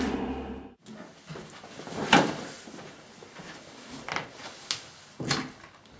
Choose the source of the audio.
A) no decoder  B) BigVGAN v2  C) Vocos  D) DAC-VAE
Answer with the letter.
A